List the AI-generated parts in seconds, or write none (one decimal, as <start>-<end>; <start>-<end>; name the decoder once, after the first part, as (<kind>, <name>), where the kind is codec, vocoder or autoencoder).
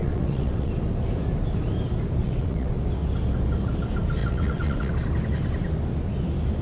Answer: 0.0-0.7 (vocoder, WaveNeXt); 2.2-2.7; 4.2-4.9